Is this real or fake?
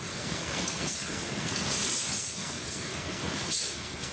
fake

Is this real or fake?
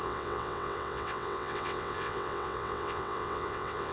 fake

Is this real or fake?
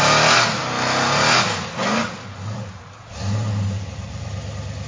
real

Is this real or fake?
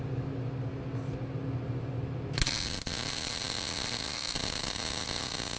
real